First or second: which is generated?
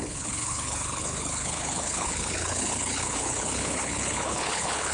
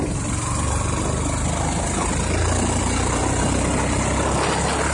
first